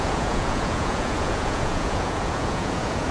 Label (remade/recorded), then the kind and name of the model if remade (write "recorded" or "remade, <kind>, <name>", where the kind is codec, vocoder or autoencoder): remade, vocoder, Vocos